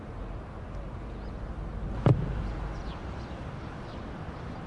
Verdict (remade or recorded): recorded